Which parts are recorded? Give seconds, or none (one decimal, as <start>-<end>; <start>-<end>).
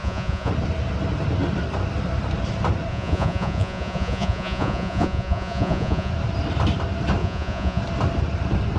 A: 0.5-2.9; 6.1-7.2; 7.8-8.8